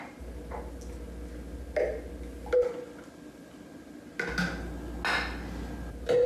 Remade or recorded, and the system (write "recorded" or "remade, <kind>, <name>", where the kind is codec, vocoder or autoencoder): recorded